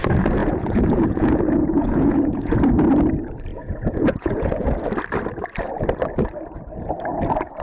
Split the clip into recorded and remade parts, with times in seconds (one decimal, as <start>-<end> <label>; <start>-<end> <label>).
0.0-0.4 recorded; 0.4-2.6 remade; 2.6-3.5 recorded; 3.5-4.9 remade; 4.9-7.6 recorded